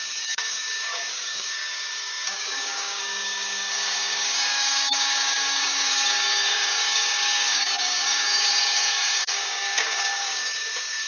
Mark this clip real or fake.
fake